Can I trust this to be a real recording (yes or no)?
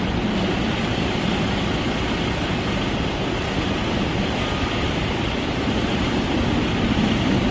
yes